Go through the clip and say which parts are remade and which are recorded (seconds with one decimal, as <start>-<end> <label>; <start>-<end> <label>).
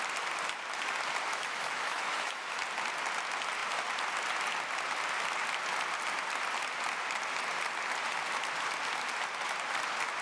0.0-1.3 recorded; 1.3-2.6 remade; 2.6-10.2 recorded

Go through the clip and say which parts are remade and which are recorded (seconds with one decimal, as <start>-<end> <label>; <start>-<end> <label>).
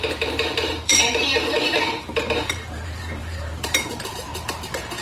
0.0-4.3 remade; 4.3-5.0 recorded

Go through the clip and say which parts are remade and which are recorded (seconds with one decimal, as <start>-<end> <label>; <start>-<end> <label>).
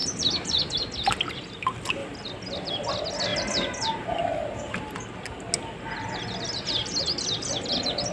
0.0-0.6 remade; 0.6-2.0 recorded; 2.0-2.9 remade; 2.9-3.3 recorded; 3.3-3.9 remade; 3.9-8.1 recorded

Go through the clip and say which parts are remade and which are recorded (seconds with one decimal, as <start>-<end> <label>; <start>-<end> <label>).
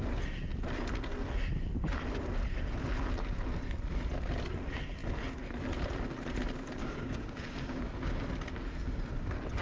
0.0-6.8 recorded; 6.8-8.2 remade; 8.2-9.6 recorded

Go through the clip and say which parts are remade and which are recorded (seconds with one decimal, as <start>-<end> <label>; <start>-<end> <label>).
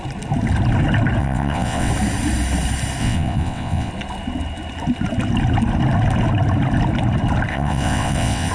0.0-1.2 recorded; 1.2-1.9 remade; 1.9-3.0 recorded; 3.0-3.9 remade; 3.9-7.5 recorded; 7.5-8.5 remade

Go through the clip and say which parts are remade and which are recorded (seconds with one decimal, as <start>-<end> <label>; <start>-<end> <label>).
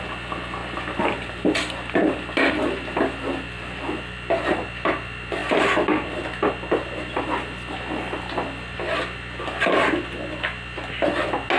0.0-11.6 recorded